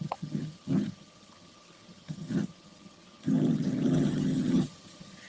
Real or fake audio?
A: fake